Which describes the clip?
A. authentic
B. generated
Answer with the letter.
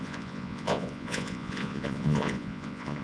B